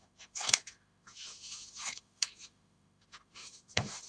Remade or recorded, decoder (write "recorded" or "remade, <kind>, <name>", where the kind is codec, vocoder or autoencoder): remade, autoencoder, DAC-VAE